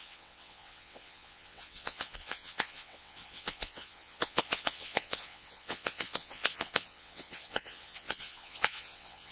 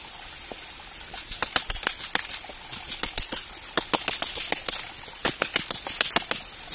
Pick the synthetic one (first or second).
first